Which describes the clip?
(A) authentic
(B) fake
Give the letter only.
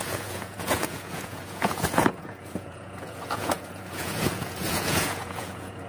B